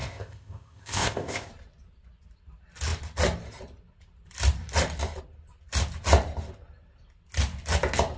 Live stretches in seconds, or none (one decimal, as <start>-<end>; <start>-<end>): 1.5-8.2